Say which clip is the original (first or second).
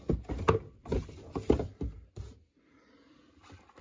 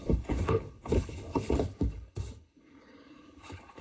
first